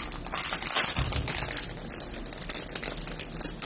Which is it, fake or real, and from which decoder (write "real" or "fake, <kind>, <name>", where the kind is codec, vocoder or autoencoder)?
real